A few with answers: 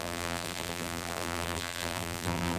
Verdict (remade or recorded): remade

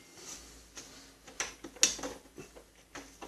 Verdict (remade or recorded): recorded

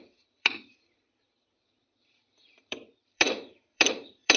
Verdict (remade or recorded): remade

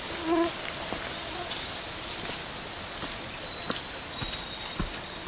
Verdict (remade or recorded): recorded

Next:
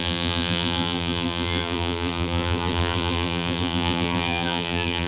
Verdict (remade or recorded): remade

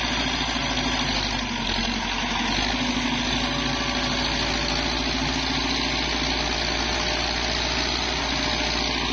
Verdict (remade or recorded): recorded